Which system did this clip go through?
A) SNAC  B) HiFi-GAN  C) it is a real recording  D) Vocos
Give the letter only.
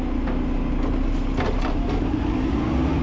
C